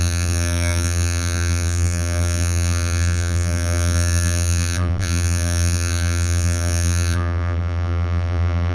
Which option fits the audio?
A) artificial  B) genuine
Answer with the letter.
A